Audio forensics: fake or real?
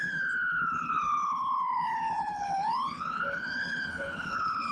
fake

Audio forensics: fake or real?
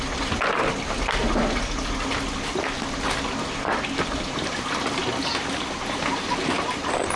real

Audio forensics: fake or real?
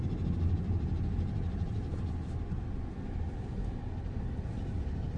real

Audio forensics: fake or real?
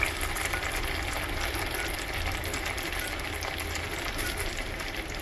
real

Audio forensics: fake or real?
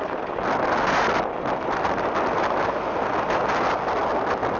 real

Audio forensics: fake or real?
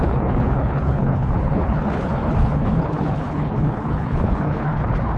fake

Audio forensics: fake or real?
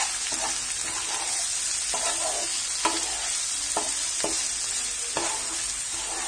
real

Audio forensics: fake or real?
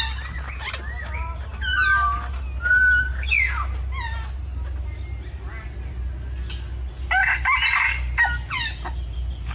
real